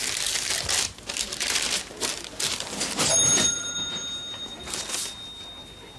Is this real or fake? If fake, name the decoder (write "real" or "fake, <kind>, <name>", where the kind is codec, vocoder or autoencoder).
real